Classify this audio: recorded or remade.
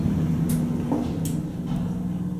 recorded